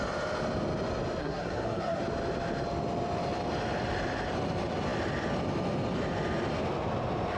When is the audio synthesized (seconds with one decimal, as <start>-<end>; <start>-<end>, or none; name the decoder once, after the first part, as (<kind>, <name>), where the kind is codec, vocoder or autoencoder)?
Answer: 1.2-2.0 (codec, SNAC)